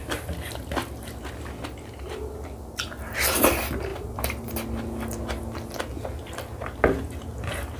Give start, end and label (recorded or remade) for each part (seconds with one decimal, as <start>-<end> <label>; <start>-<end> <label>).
0.0-3.9 recorded; 3.9-4.5 remade; 4.5-7.8 recorded